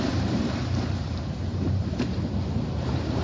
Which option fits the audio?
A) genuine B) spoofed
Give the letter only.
B